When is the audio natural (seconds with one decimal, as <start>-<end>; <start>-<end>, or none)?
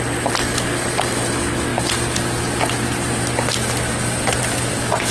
0.0-5.1